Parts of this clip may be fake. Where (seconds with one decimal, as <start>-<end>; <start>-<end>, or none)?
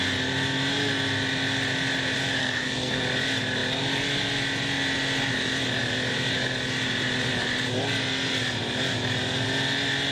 2.4-3.0